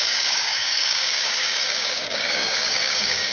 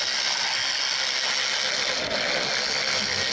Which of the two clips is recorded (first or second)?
second